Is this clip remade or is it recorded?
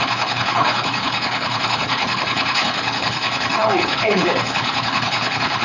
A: remade